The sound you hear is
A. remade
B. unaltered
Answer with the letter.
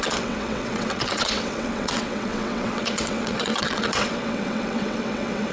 A